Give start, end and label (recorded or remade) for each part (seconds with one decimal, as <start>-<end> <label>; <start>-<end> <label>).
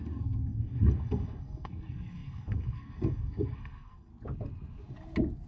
0.0-4.1 remade; 4.1-5.5 recorded